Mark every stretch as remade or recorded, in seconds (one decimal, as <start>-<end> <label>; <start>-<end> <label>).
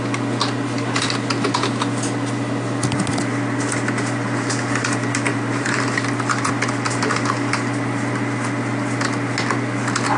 0.0-5.3 recorded; 5.3-6.5 remade; 6.5-10.2 recorded